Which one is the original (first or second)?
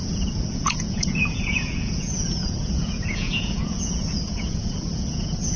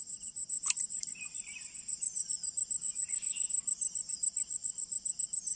second